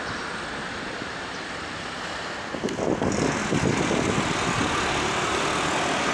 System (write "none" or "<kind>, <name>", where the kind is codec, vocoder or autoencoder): none